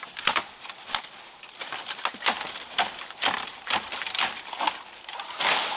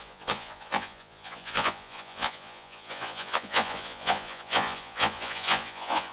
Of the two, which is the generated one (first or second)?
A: second